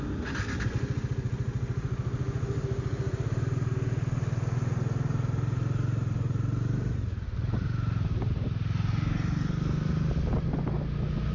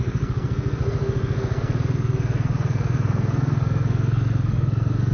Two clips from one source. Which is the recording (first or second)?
first